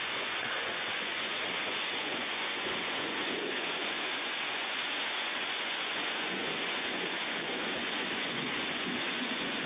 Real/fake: fake